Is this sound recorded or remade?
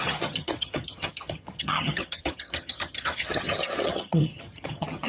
remade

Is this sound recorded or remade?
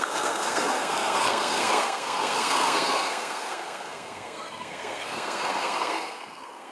remade